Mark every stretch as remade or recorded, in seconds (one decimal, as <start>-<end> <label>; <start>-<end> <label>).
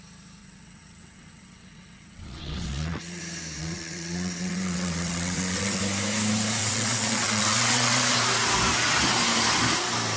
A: 0.0-0.4 recorded; 0.4-3.2 remade; 3.2-3.6 recorded; 3.6-5.8 remade; 5.8-6.6 recorded; 6.6-8.0 remade; 8.0-10.2 recorded